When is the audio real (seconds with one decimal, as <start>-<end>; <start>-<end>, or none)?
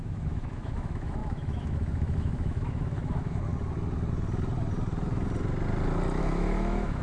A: 3.5-6.2